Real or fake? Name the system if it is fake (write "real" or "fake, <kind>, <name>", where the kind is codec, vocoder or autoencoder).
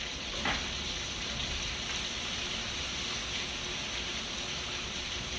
real